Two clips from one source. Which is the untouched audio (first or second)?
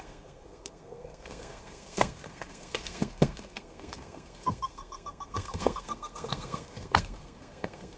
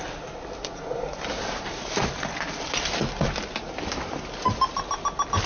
second